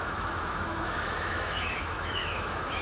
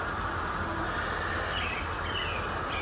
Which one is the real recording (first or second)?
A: second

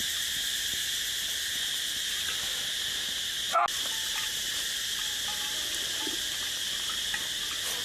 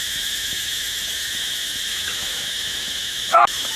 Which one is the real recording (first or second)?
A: first